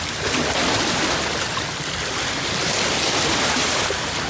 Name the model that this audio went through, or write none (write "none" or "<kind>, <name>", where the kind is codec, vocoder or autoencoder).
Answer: none